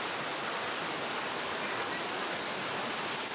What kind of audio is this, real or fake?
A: real